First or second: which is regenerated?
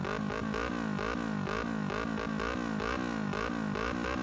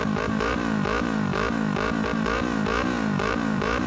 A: second